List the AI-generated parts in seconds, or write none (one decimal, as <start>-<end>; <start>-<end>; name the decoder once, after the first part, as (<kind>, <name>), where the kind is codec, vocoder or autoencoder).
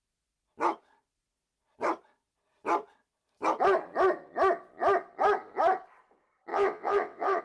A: 6.5-7.4 (vocoder, WaveNeXt)